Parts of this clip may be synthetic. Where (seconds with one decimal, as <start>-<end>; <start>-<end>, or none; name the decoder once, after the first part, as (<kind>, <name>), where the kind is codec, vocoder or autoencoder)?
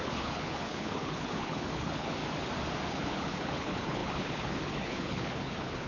0.0-2.2 (codec, HILCodec); 2.9-5.9